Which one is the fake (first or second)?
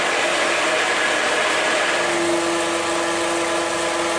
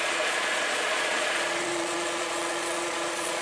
second